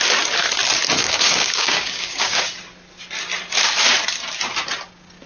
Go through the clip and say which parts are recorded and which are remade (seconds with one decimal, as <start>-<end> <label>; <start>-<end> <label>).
0.0-1.0 recorded; 1.0-2.4 remade; 2.4-5.3 recorded